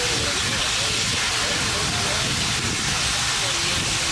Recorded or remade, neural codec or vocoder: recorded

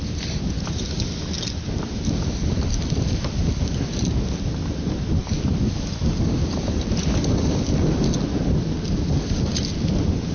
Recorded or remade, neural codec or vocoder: recorded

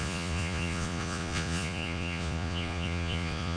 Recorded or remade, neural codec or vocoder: remade, vocoder, Vocos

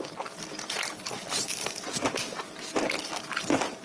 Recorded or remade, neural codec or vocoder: remade, vocoder, BigVGAN v2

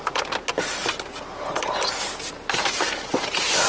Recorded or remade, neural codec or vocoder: recorded